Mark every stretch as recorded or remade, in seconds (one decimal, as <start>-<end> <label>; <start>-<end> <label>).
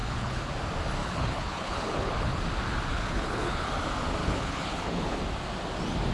0.0-0.5 remade; 0.5-1.0 recorded; 1.0-2.4 remade; 2.4-2.9 recorded; 2.9-3.7 remade; 3.7-4.2 recorded; 4.2-5.2 remade; 5.2-6.1 recorded